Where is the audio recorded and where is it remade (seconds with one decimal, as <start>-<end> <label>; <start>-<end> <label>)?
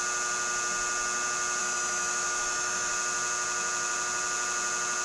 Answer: 0.0-1.6 recorded; 1.6-2.9 remade; 2.9-5.0 recorded